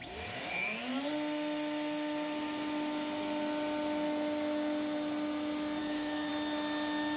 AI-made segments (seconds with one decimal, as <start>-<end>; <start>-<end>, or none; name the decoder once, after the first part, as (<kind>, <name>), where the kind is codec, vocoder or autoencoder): 5.8-6.3 (autoencoder, DAC-VAE)